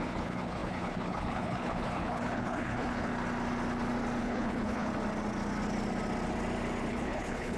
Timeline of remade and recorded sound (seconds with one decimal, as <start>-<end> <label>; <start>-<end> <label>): 0.0-3.1 remade; 3.1-4.2 recorded; 4.2-4.9 remade; 4.9-6.9 recorded; 6.9-7.6 remade

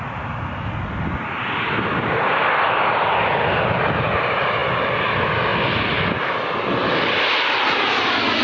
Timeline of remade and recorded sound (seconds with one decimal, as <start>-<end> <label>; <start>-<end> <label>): 0.0-8.4 recorded

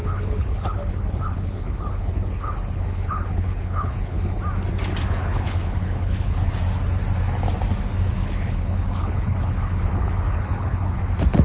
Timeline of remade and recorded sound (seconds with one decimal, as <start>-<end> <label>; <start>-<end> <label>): 0.0-4.4 remade; 4.4-5.2 recorded; 5.2-6.5 remade; 6.5-8.2 recorded; 8.2-11.0 remade; 11.0-11.4 recorded

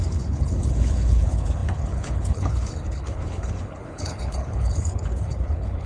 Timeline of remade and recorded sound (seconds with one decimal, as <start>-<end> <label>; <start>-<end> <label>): 0.0-5.9 remade

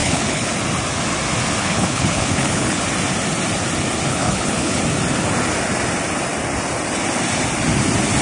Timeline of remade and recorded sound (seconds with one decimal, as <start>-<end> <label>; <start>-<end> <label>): 0.0-0.5 remade; 0.5-1.6 recorded; 1.6-2.8 remade; 2.8-4.1 recorded; 4.1-4.8 remade; 4.8-8.2 recorded

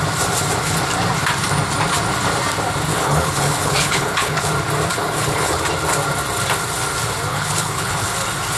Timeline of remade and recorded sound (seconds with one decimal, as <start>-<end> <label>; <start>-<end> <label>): 0.0-2.9 recorded; 2.9-4.5 remade; 4.5-4.9 recorded; 4.9-5.6 remade; 5.6-7.3 recorded; 7.3-8.1 remade; 8.1-8.6 recorded

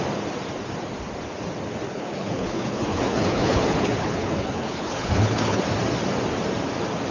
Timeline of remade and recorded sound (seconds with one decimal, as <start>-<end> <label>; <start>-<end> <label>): 0.0-1.9 recorded; 1.9-5.6 remade; 5.6-7.1 recorded